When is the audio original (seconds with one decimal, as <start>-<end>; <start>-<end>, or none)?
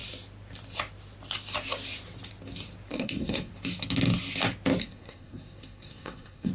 0.0-2.9; 3.5-4.8